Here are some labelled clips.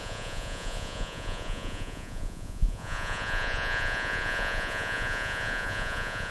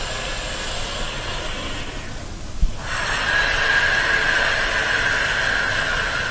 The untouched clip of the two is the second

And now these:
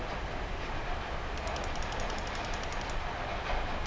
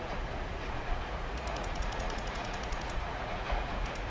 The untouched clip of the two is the first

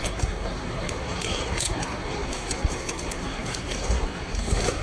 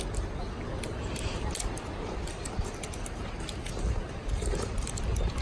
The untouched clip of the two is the second